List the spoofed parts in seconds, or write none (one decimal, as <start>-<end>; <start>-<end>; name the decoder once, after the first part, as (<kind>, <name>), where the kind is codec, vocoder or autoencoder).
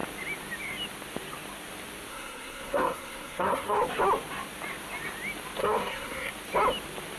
2.1-3.8 (codec, SNAC); 5.6-6.3